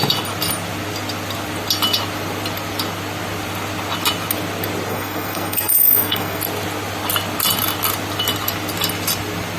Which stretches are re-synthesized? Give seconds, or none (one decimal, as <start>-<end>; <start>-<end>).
4.9-6.4